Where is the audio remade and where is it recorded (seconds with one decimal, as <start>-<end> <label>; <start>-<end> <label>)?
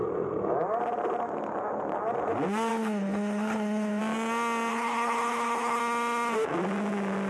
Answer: 0.0-2.7 recorded; 2.7-4.0 remade; 4.0-4.7 recorded; 4.7-5.8 remade; 5.8-7.3 recorded